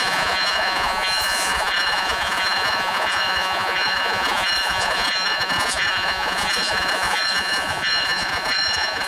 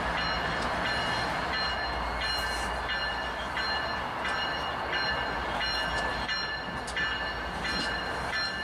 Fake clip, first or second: first